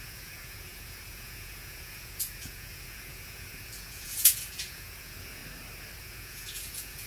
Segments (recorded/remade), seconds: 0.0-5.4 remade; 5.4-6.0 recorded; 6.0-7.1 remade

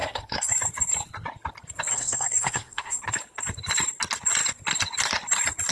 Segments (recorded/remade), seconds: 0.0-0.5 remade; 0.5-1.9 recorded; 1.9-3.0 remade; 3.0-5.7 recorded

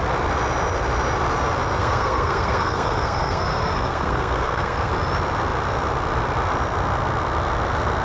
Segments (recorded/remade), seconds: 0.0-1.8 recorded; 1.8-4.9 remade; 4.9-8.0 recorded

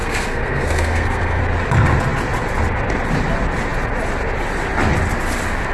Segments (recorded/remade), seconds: 0.0-1.4 remade; 1.4-5.7 recorded

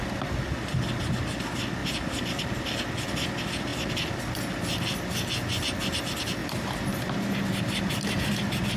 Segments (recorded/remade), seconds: 0.0-1.8 recorded; 1.8-2.4 remade; 2.4-6.4 recorded; 6.4-8.3 remade; 8.3-8.8 recorded

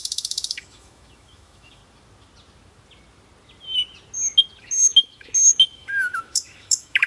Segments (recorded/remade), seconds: 0.0-1.8 remade; 1.8-4.6 recorded; 4.6-7.1 remade